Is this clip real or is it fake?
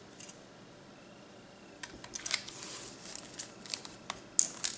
real